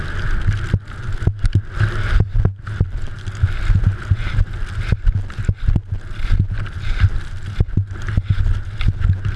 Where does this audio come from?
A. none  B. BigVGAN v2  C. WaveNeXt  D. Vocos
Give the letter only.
A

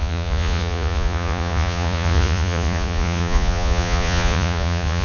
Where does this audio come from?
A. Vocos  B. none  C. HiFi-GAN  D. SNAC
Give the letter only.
A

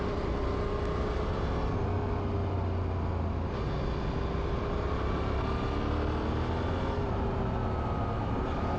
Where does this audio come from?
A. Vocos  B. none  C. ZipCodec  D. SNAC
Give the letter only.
B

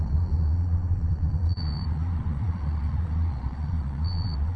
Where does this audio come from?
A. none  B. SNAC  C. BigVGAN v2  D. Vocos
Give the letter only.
D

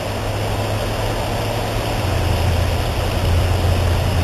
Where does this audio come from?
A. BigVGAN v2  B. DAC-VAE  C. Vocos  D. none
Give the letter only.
D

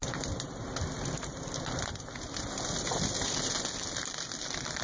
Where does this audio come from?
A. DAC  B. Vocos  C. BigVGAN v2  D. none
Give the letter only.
D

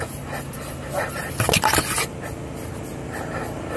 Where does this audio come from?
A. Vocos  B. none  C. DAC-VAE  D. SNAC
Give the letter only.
B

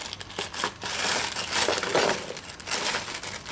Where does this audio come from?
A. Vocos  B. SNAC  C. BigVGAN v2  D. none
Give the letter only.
D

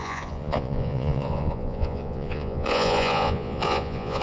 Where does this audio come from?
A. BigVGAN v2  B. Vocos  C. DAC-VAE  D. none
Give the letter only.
B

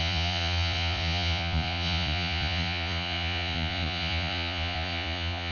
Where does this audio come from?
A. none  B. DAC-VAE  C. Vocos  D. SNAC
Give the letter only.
C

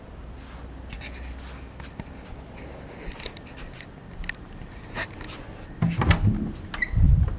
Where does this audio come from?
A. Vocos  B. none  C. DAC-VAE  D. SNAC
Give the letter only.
B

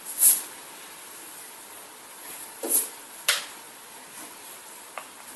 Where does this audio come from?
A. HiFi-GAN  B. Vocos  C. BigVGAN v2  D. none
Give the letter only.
D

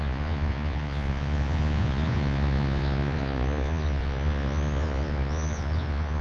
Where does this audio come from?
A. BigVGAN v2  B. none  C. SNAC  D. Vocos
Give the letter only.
D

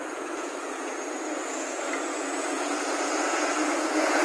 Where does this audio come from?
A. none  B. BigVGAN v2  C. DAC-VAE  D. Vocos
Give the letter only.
D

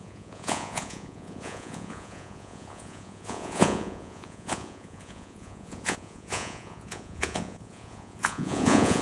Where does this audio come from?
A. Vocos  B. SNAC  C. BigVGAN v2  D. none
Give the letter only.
A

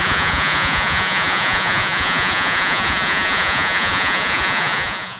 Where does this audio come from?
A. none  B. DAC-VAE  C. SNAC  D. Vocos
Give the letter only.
D